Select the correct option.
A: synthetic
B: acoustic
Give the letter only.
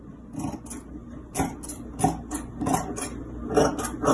B